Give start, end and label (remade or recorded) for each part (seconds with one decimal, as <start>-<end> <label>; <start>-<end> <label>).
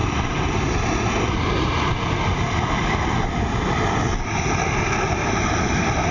0.0-6.1 recorded